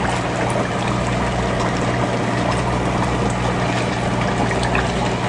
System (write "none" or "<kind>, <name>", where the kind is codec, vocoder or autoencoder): none